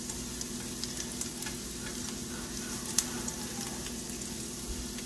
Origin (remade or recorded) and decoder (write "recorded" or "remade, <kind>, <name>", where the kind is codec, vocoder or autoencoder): recorded